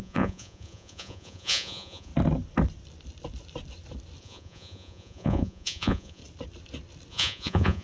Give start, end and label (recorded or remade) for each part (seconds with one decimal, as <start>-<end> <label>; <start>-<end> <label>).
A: 0.0-2.1 remade; 2.1-4.2 recorded; 4.2-6.2 remade; 6.2-7.1 recorded; 7.1-7.8 remade